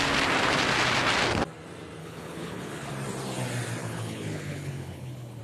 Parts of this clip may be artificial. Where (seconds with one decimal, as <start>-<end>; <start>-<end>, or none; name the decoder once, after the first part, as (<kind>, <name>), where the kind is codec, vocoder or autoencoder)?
2.0-2.9 (codec, HILCodec); 3.8-5.4